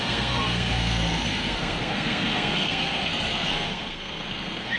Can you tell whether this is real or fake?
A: fake